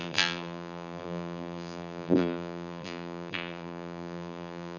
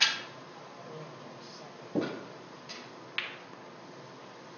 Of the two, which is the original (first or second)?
second